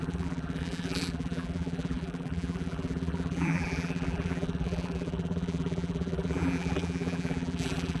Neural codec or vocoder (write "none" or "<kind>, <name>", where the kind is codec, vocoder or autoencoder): vocoder, BigVGAN v2